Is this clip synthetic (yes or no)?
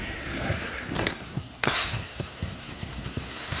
yes